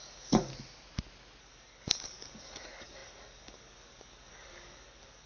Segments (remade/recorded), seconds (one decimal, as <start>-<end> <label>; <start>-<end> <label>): 0.0-0.5 remade; 0.5-1.4 recorded; 1.4-5.3 remade